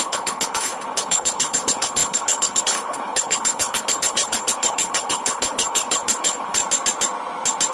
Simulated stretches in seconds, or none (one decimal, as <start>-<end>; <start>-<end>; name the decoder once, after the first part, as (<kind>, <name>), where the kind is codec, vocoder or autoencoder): 0.0-6.6 (codec, HILCodec)